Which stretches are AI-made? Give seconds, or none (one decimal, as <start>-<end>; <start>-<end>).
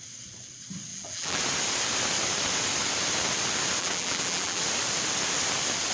0.9-1.4; 3.8-4.6